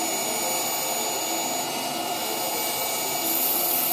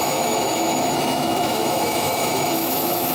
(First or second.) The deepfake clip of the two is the second